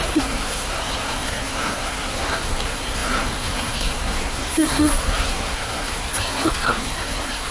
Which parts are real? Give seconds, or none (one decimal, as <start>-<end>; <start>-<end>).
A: none